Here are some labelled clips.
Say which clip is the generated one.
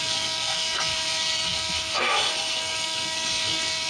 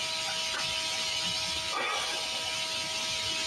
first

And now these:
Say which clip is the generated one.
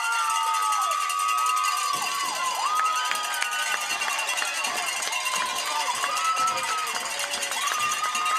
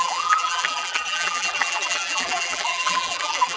second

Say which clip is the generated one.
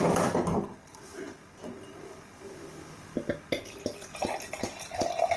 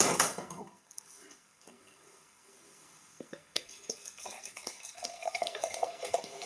second